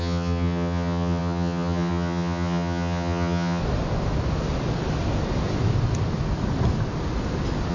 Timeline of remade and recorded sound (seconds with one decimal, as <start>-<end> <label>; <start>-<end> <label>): 0.0-3.6 remade; 3.6-7.7 recorded